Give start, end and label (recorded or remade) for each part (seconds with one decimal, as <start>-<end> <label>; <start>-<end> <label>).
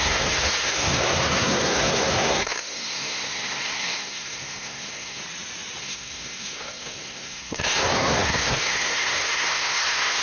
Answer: 0.0-5.2 remade; 5.2-5.8 recorded; 5.8-10.2 remade